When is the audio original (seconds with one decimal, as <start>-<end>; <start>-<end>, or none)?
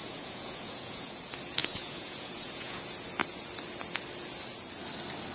1.2-1.6; 2.8-5.3